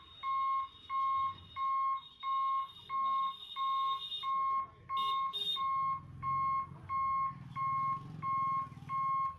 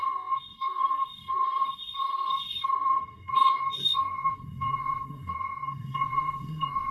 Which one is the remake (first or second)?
second